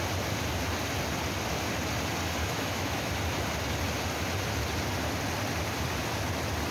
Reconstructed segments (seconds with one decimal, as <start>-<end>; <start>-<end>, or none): 2.4-3.1